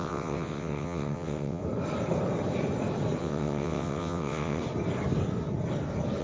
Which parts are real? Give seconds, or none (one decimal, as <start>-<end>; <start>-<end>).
1.6-3.2; 4.6-6.2